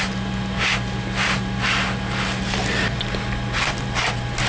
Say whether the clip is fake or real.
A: real